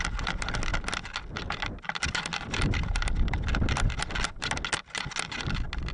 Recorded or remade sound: recorded